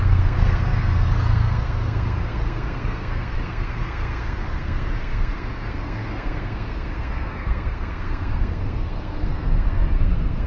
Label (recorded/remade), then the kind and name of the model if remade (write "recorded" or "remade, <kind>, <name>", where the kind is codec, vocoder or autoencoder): remade, codec, SNAC